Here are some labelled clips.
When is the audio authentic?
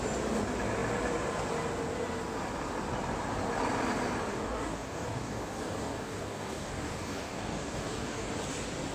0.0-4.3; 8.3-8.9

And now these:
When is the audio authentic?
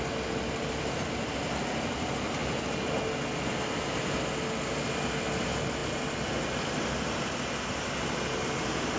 0.0-9.0